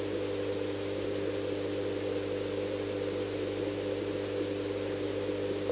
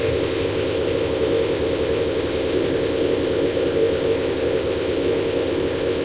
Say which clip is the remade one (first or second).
second